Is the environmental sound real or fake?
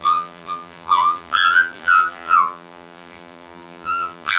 fake